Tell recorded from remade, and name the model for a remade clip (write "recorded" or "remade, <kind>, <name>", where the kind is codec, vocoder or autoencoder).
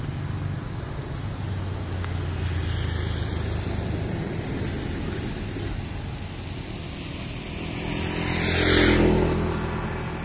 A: recorded